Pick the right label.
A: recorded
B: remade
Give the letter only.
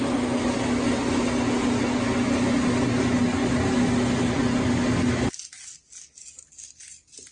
A